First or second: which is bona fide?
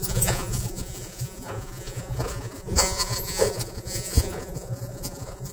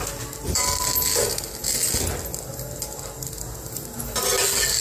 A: second